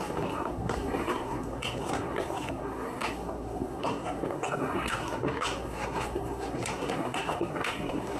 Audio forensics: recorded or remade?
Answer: remade